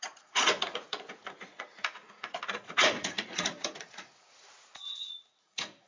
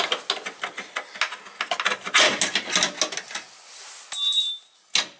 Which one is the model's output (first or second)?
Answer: first